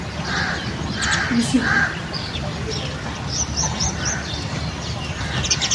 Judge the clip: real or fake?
fake